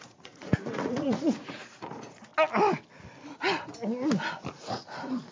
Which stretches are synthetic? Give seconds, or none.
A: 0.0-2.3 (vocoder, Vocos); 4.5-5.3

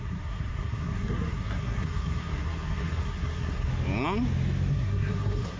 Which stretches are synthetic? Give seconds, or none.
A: 0.0-3.7 (codec, SNAC); 4.7-5.6

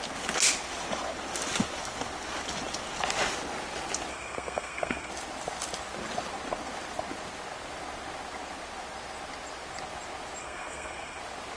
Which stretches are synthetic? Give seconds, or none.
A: 4.1-5.1 (codec, SNAC); 10.4-11.2

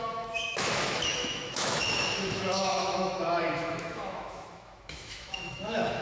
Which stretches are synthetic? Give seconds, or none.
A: 0.0-6.0 (autoencoder, DAC-VAE)

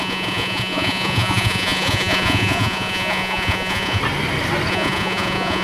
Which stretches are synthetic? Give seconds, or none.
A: 0.0-4.0 (vocoder, Vocos); 4.7-5.6

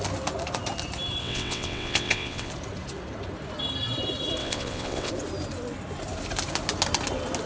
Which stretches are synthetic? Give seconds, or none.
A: 1.2-2.5 (vocoder, WaveNeXt); 4.4-5.1

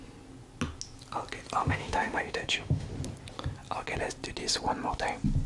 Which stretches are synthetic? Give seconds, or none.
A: 1.6-2.9 (autoencoder, DAC-VAE)